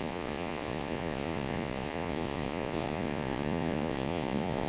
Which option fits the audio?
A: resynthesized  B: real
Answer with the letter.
A